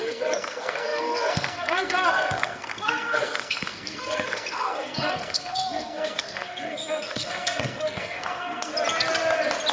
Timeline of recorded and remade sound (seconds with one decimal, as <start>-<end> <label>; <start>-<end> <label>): 0.0-8.7 remade; 8.7-9.7 recorded